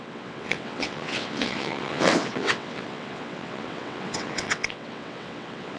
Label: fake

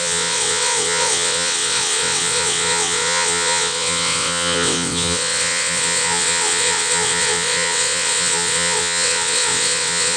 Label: fake